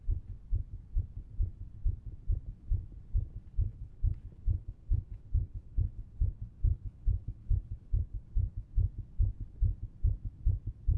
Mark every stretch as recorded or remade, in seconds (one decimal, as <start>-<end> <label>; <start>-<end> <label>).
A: 0.0-3.7 recorded; 3.7-8.7 remade; 8.7-11.0 recorded